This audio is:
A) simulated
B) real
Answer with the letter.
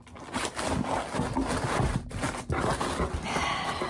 B